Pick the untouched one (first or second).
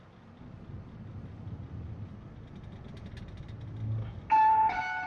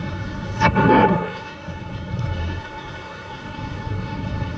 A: first